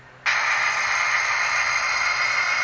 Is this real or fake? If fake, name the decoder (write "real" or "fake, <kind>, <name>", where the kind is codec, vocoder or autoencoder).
real